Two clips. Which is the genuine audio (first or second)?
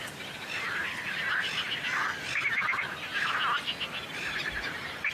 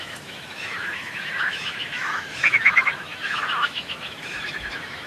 first